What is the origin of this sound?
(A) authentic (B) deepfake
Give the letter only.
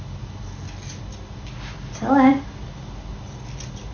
A